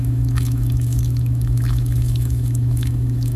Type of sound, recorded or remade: remade